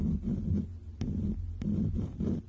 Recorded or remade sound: recorded